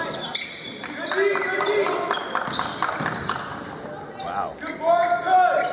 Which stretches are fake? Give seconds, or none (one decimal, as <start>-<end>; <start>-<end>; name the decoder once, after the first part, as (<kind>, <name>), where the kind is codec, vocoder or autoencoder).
none